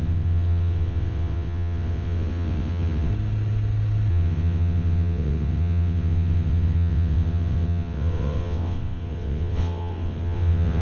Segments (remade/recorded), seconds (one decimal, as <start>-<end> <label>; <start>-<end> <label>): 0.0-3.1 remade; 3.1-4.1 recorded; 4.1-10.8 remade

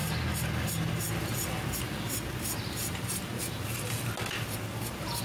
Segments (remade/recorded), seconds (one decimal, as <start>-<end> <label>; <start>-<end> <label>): 0.0-1.6 remade; 1.6-2.8 recorded; 2.8-3.3 remade; 3.3-5.2 recorded

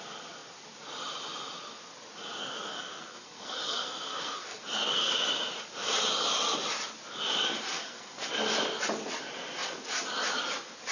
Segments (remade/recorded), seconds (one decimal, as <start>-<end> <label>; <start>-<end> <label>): 0.0-2.4 recorded; 2.4-5.1 remade; 5.1-7.7 recorded; 7.7-8.3 remade; 8.3-10.9 recorded